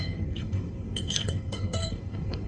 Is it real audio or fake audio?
fake